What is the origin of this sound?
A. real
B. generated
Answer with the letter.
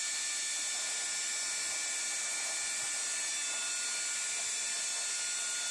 A